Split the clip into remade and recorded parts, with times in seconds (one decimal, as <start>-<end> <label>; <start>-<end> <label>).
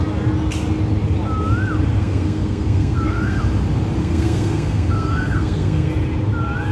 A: 0.0-2.0 recorded; 2.0-3.4 remade; 3.4-4.0 recorded; 4.0-5.9 remade; 5.9-6.7 recorded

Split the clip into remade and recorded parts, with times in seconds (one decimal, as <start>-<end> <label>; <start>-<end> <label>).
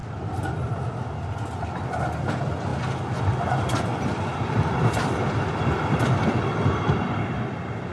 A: 0.0-7.9 recorded